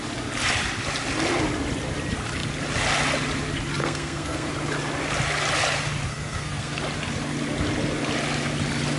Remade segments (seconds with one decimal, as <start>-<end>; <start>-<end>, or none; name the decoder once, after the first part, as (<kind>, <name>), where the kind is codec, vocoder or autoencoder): 3.8-4.5 (codec, SNAC); 6.1-6.8